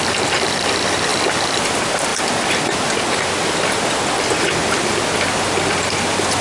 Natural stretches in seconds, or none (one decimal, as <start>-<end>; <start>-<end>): 1.1-1.7; 2.1-4.4